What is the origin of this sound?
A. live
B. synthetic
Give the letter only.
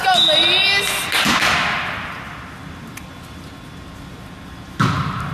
A